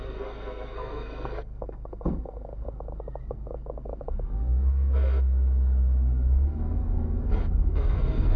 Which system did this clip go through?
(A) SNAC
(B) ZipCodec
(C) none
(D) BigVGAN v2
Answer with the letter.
A